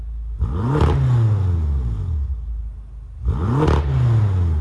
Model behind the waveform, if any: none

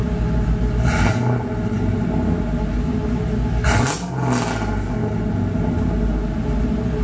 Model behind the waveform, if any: none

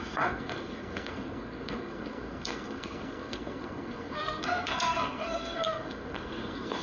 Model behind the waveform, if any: codec, SNAC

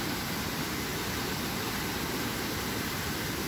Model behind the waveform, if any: none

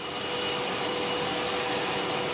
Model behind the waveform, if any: none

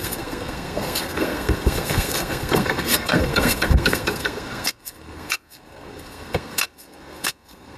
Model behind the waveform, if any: codec, SNAC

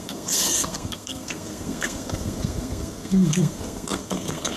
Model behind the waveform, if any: codec, SNAC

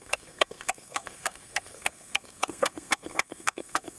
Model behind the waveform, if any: codec, SNAC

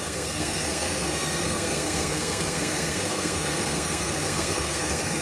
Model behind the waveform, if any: codec, SNAC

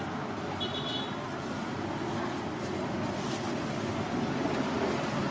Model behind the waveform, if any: none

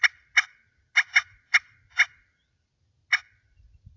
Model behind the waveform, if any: none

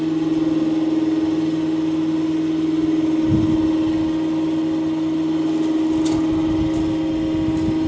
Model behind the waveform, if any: none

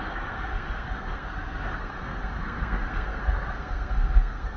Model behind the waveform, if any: codec, SNAC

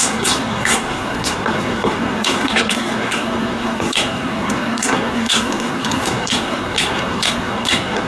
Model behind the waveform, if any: codec, SNAC